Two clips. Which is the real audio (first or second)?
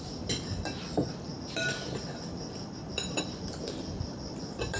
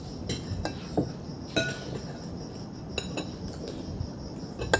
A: second